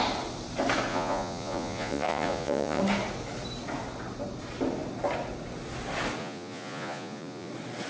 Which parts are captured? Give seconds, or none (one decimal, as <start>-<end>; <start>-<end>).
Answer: 0.0-0.9; 2.8-6.2; 7.5-7.9